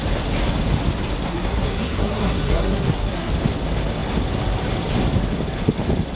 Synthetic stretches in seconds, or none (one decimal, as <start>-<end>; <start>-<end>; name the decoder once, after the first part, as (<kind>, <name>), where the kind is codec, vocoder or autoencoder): 1.3-3.3 (codec, SNAC)